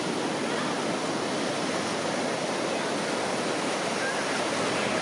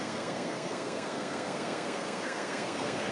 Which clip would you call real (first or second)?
first